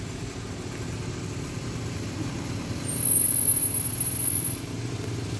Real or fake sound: real